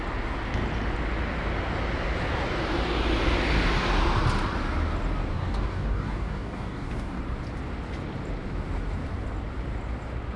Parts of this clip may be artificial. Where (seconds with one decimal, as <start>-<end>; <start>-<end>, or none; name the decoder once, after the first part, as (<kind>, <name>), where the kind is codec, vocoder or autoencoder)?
5.3-7.2 (codec, DAC)